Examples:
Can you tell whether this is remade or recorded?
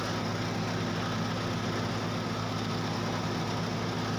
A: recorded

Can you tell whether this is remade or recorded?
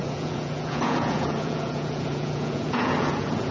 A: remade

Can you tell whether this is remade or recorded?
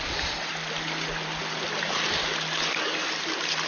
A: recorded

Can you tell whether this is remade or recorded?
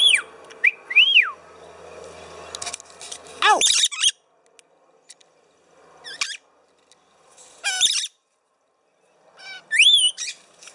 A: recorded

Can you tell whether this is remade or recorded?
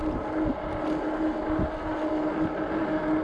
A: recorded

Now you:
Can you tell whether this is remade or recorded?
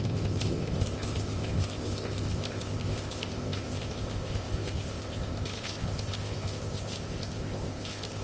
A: remade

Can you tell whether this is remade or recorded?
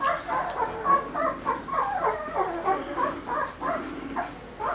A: recorded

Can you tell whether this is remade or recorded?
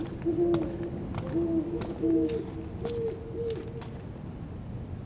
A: recorded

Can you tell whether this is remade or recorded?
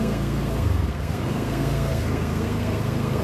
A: remade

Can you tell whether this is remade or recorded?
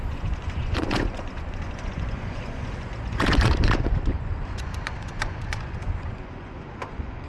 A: remade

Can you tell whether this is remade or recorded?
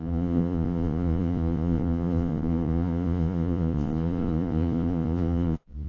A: remade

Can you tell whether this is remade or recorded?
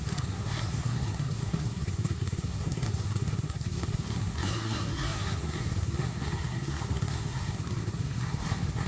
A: remade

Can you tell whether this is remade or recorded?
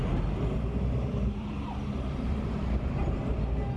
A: remade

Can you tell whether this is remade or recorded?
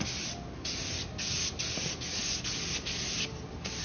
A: recorded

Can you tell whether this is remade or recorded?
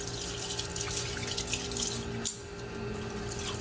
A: recorded